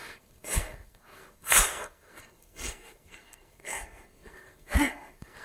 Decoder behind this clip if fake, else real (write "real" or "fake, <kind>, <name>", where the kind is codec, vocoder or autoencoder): fake, codec, SNAC